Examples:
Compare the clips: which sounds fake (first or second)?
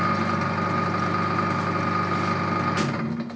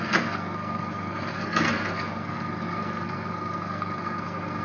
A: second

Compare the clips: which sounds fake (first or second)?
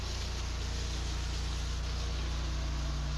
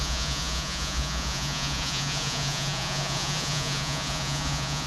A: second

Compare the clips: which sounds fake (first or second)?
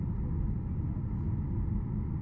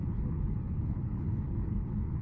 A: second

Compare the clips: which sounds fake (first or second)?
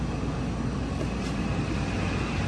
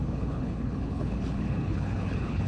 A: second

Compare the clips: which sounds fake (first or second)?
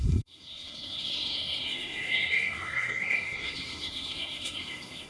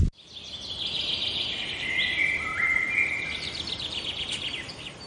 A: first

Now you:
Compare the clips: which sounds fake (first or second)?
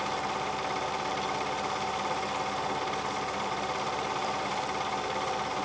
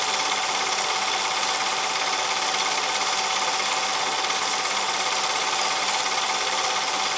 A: first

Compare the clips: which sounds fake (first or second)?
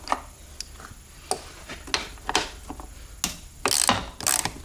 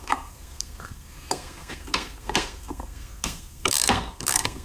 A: second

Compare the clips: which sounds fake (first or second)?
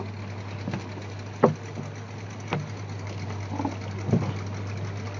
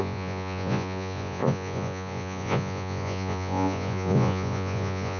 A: second